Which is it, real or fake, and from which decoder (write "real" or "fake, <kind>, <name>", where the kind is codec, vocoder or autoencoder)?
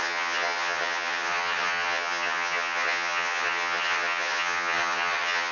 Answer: fake, vocoder, HiFi-GAN